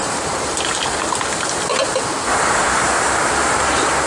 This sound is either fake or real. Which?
real